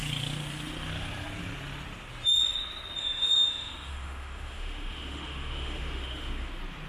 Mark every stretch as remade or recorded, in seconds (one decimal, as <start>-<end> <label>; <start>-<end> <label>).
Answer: 0.0-3.0 recorded; 3.0-6.5 remade; 6.5-6.9 recorded